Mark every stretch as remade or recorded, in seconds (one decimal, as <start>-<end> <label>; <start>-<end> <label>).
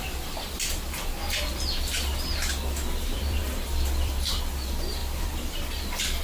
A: 0.0-6.2 remade